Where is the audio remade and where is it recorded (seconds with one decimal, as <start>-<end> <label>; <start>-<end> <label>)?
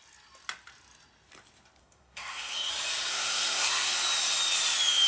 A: 0.0-1.8 recorded; 1.8-2.7 remade; 2.7-3.1 recorded; 3.1-3.9 remade; 3.9-5.1 recorded